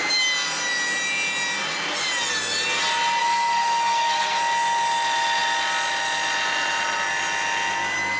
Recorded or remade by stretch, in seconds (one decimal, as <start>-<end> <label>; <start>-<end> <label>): 0.0-3.2 recorded; 3.2-4.4 remade; 4.4-8.2 recorded